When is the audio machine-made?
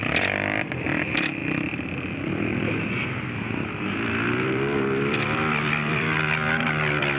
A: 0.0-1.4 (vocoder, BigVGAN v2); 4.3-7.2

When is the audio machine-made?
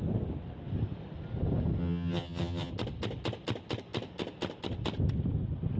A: 1.8-2.7 (vocoder, HiFi-GAN)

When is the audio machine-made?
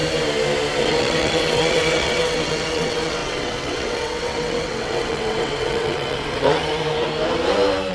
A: 0.8-6.6 (vocoder, WaveNeXt)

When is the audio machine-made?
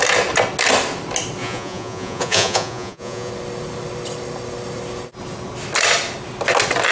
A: 1.4-3.3 (vocoder, Vocos)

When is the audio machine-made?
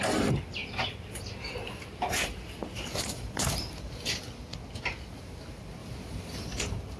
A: none